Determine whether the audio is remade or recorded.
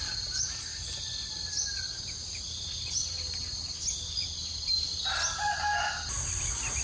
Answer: recorded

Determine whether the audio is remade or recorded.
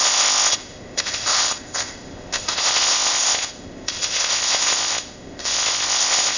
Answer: remade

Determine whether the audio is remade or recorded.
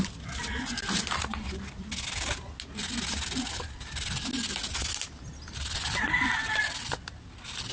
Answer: recorded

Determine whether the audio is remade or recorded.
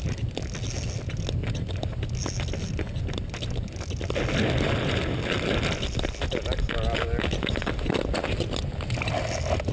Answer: recorded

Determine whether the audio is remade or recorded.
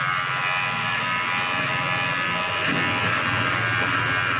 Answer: recorded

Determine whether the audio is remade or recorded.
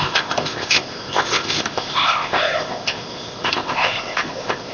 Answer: remade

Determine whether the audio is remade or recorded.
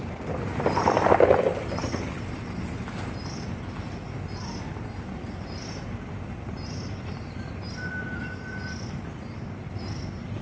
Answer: recorded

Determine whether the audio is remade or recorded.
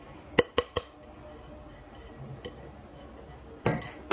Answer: recorded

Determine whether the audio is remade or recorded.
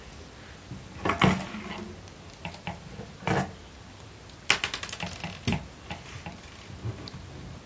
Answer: recorded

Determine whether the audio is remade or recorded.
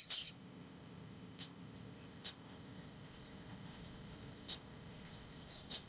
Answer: remade